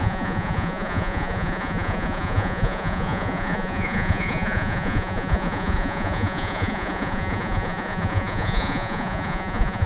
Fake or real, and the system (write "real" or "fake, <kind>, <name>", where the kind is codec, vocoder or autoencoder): fake, vocoder, Vocos